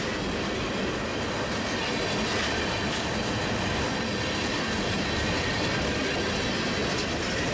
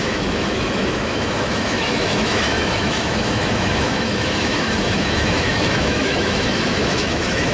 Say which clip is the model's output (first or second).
second